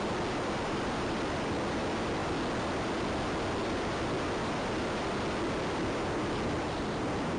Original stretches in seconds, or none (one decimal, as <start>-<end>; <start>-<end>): 0.0-7.4